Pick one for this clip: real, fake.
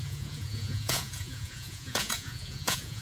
fake